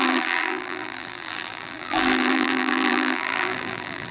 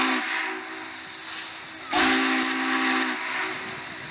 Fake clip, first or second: first